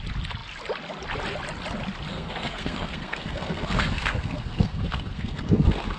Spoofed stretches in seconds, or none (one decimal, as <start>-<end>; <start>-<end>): 2.1-6.0